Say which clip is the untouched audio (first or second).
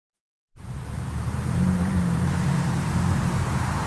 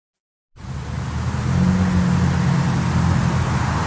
second